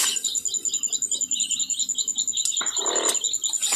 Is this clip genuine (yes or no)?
yes